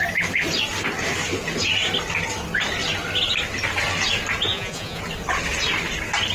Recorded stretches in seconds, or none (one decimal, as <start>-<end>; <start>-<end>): 0.0-4.5; 5.0-6.3